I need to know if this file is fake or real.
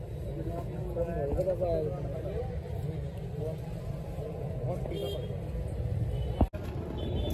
real